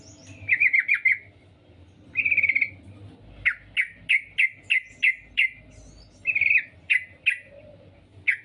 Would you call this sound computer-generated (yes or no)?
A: no